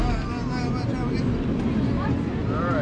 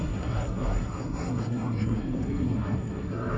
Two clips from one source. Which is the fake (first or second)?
second